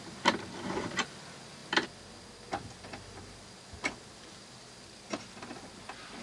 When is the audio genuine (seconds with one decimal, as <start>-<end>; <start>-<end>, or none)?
0.0-6.2